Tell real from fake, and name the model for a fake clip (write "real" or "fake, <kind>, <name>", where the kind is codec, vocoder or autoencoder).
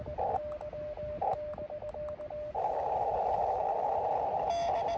real